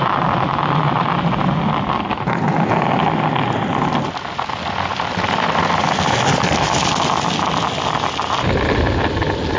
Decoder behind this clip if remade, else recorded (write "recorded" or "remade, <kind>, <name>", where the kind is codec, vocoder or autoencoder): recorded